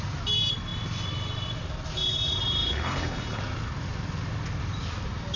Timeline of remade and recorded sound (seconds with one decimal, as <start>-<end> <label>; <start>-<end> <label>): 0.0-2.7 recorded; 2.7-3.4 remade; 3.4-5.4 recorded